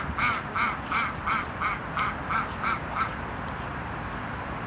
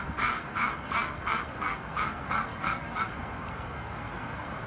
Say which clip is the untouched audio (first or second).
first